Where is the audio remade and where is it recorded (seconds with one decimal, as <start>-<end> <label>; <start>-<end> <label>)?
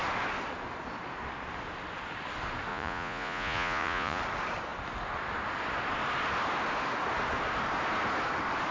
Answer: 0.0-2.7 recorded; 2.7-4.2 remade; 4.2-8.7 recorded